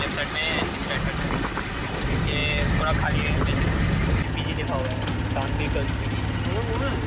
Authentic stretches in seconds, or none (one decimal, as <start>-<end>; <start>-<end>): 0.0-7.1